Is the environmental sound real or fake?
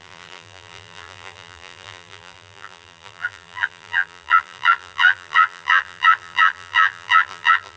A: fake